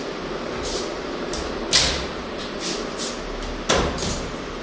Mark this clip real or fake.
real